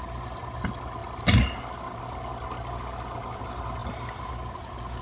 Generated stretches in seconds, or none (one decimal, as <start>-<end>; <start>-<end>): none